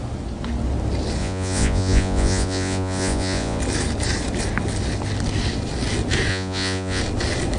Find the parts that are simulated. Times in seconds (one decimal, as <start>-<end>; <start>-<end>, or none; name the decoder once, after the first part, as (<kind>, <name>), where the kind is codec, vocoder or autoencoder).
1.2-3.6 (vocoder, Vocos); 6.3-7.0